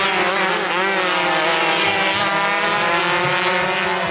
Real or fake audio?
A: real